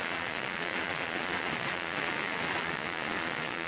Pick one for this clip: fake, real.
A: fake